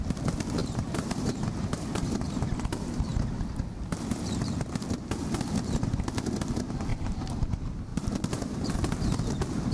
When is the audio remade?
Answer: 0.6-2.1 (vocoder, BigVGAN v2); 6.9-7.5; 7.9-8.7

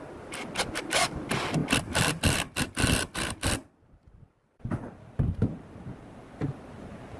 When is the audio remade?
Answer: none

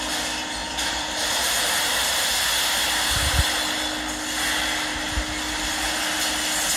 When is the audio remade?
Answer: 0.6-2.5 (vocoder, BigVGAN v2)

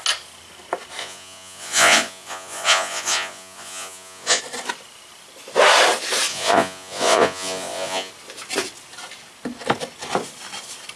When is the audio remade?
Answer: 1.0-4.4 (vocoder, Vocos); 6.3-8.1